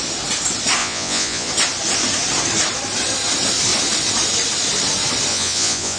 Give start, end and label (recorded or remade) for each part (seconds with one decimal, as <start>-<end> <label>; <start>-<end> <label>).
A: 0.0-0.8 recorded; 0.8-1.5 remade; 1.5-5.3 recorded; 5.3-6.0 remade